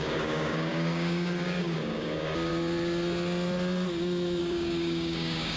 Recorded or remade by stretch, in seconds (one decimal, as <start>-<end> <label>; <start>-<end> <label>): 0.0-2.5 remade; 2.5-4.4 recorded; 4.4-5.6 remade